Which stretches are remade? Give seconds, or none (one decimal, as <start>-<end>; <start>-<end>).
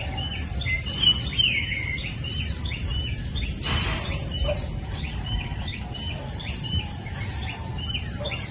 none